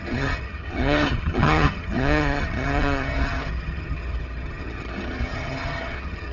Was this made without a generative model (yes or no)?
no